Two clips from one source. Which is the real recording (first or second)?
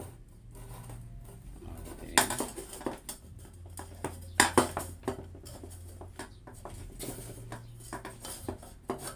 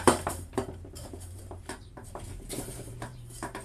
first